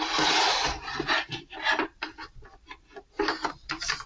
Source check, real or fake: fake